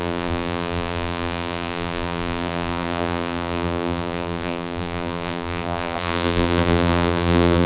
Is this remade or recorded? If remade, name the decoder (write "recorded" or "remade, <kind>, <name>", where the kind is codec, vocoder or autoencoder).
remade, vocoder, BigVGAN v2